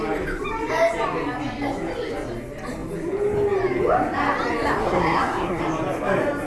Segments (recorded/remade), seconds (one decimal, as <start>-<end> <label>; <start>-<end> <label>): 0.0-4.8 recorded; 4.8-5.6 remade; 5.6-6.5 recorded